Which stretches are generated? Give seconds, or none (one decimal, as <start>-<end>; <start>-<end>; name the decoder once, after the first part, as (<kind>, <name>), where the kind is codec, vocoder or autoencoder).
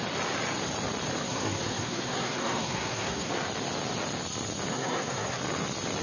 1.2-3.3 (codec, SNAC); 4.7-5.4